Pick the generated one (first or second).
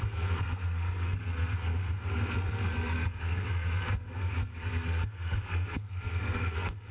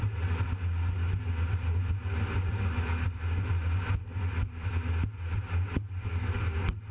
first